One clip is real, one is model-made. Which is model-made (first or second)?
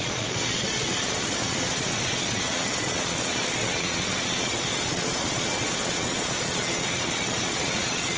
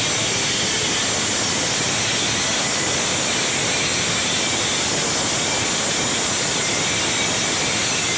first